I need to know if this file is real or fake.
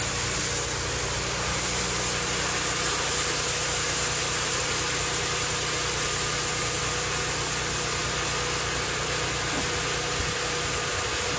real